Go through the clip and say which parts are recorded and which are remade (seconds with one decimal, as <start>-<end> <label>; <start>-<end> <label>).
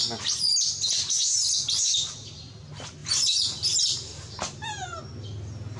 0.0-3.0 recorded; 3.0-5.0 remade; 5.0-5.8 recorded